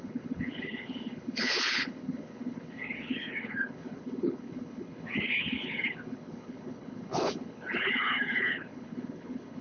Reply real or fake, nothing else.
fake